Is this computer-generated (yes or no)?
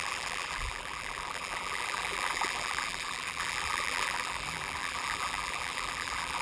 yes